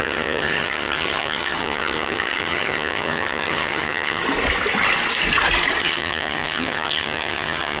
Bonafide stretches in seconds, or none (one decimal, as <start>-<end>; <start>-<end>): 4.2-5.8